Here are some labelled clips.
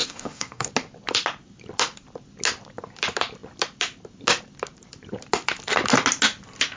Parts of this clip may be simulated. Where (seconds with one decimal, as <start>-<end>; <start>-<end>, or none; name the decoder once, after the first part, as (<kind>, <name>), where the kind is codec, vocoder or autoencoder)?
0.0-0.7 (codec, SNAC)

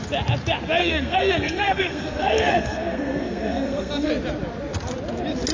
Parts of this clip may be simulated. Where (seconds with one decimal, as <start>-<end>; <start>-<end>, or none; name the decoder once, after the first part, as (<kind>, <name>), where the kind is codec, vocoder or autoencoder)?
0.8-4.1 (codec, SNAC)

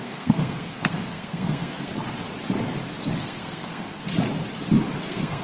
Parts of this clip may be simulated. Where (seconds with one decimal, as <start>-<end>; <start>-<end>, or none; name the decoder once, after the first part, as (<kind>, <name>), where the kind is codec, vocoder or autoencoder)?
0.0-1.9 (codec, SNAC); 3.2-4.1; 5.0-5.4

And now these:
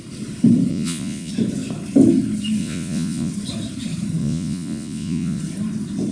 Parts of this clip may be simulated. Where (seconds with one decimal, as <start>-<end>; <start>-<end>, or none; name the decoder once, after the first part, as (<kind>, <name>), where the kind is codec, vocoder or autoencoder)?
0.7-1.3 (vocoder, Vocos); 2.6-3.3; 4.2-5.4

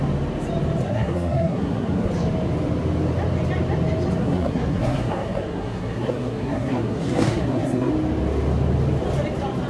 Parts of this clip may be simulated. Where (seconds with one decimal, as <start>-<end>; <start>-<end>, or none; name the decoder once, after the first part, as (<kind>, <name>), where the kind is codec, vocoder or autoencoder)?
0.8-2.1 (codec, SNAC); 4.2-7.9

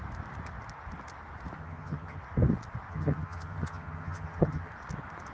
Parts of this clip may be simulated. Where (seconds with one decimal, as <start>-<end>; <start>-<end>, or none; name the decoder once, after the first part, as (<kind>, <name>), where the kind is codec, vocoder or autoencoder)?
1.6-2.2 (vocoder, HiFi-GAN); 2.9-4.7

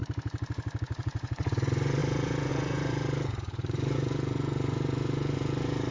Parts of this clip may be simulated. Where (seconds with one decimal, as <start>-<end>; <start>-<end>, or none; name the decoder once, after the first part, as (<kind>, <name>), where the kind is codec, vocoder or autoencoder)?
0.8-5.9 (vocoder, Vocos)

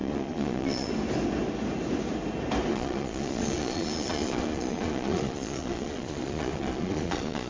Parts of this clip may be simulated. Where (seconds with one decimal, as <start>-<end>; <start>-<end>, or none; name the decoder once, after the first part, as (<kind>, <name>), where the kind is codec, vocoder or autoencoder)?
0.0-0.9 (vocoder, Vocos); 2.7-7.5